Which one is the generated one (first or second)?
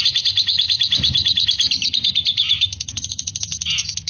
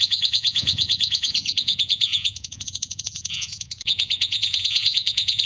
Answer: second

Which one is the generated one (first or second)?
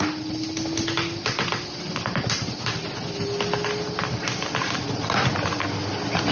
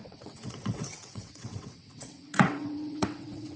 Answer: second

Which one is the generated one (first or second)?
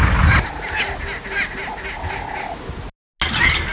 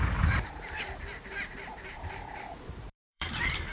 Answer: second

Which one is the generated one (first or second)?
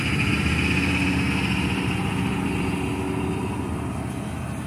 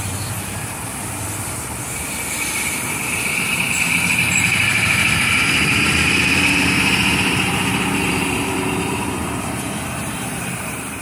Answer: second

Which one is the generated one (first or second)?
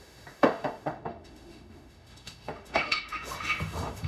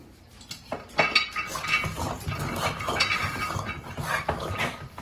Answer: first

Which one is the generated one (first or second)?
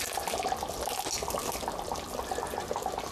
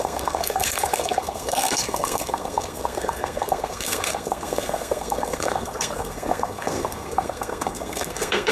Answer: second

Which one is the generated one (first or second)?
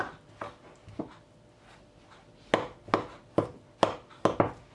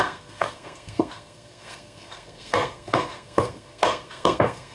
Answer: second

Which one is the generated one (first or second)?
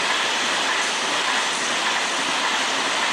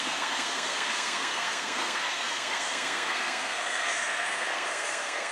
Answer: second